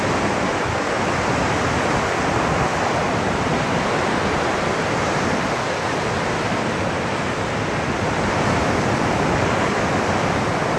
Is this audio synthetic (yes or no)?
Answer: no